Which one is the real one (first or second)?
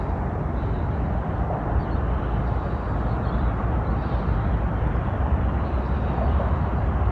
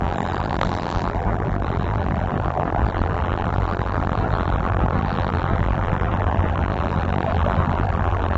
first